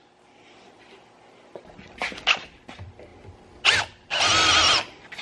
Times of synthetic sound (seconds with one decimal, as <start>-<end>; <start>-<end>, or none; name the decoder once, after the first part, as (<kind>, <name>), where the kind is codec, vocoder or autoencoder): none